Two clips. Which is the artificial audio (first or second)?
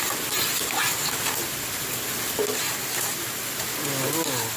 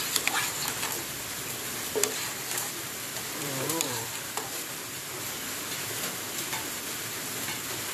second